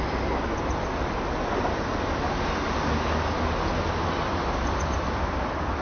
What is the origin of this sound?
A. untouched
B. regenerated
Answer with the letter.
A